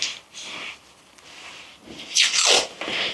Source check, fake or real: real